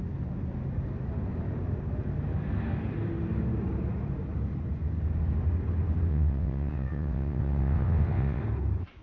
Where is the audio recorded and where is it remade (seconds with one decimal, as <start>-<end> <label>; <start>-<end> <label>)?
0.0-6.1 recorded; 6.1-8.4 remade; 8.4-9.0 recorded